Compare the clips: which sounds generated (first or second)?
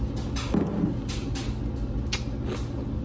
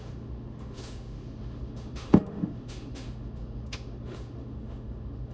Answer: second